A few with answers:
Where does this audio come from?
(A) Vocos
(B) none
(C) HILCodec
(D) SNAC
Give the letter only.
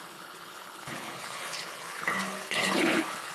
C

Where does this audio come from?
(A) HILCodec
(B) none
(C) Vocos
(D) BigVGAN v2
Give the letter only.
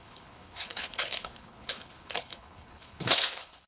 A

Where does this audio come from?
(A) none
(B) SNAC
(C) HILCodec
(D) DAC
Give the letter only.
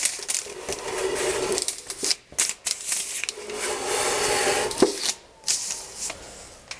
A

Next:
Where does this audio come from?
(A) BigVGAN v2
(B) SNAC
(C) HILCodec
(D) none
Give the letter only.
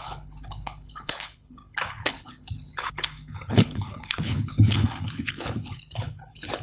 C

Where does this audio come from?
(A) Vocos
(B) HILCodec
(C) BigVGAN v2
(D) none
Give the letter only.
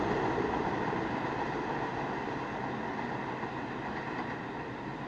D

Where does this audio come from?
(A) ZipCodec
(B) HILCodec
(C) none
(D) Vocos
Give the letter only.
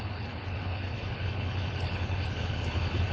B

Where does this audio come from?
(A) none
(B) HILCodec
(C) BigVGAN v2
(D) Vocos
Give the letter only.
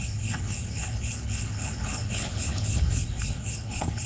B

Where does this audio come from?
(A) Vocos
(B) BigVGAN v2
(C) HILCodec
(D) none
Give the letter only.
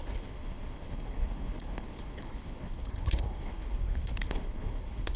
C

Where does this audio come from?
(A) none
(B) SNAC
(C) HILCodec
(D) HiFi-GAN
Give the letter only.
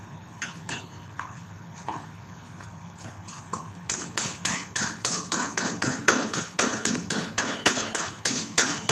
C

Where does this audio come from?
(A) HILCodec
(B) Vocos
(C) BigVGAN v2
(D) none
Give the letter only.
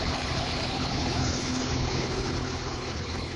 A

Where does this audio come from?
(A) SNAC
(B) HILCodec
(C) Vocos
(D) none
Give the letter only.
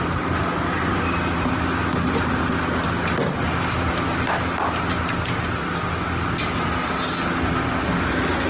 D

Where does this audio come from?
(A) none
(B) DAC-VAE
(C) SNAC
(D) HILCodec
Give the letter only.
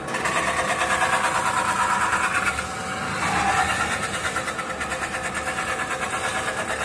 A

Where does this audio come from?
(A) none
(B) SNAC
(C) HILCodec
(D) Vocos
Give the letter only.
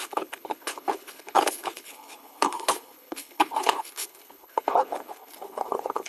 C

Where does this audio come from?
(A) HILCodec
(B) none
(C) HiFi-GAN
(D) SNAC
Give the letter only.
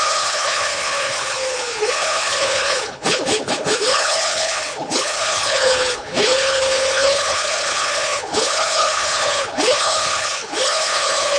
A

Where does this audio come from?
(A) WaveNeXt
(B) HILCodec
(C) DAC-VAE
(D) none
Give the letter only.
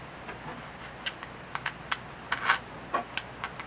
D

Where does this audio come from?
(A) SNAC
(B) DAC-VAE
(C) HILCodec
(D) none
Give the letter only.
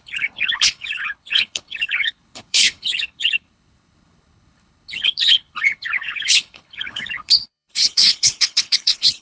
C